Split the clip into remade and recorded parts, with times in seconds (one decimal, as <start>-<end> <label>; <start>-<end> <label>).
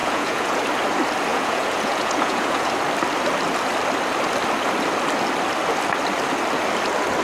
0.0-0.6 remade; 0.6-1.3 recorded; 1.3-2.7 remade; 2.7-7.2 recorded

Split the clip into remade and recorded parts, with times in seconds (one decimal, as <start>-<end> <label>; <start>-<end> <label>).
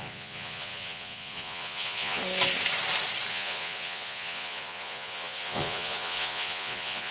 0.0-2.2 remade; 2.2-3.3 recorded; 3.3-7.1 remade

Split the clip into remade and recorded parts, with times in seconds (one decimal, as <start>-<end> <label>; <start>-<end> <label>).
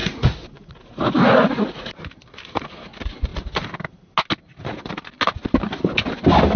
0.0-1.9 remade; 1.9-6.6 recorded